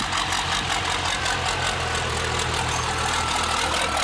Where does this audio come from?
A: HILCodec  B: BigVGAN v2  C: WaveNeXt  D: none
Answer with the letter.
D